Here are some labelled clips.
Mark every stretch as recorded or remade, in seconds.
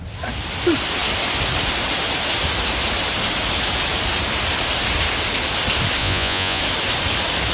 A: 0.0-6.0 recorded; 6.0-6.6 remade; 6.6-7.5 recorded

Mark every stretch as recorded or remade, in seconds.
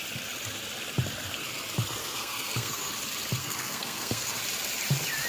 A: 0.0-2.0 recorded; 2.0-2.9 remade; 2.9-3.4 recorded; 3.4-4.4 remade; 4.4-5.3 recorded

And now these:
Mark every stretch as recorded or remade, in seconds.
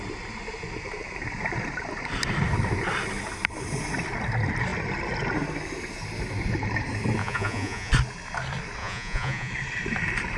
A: 0.0-7.2 recorded; 7.2-7.9 remade; 7.9-8.8 recorded; 8.8-9.5 remade; 9.5-10.4 recorded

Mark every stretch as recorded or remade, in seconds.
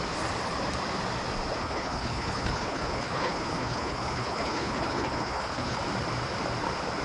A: 0.0-1.6 recorded; 1.6-5.8 remade; 5.8-7.0 recorded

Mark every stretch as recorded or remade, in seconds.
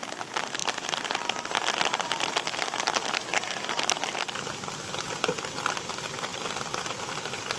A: 0.0-3.3 recorded; 3.3-4.2 remade; 4.2-7.6 recorded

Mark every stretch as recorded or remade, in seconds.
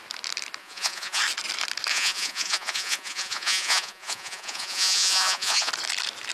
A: 0.0-0.6 recorded; 0.6-1.2 remade; 1.2-1.9 recorded; 1.9-5.7 remade; 5.7-6.3 recorded